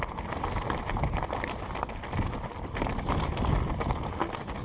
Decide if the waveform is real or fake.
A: real